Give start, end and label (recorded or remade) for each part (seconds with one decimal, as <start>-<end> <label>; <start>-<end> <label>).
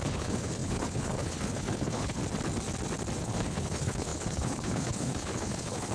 0.0-2.2 remade; 2.2-3.2 recorded; 3.2-5.9 remade